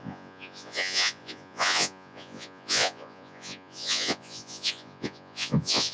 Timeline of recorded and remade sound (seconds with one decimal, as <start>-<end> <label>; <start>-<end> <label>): 0.0-5.9 remade